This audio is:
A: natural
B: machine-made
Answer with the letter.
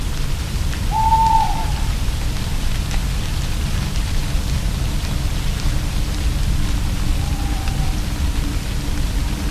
A